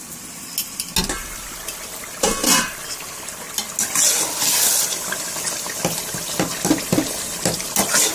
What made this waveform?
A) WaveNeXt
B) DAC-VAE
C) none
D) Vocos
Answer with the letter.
C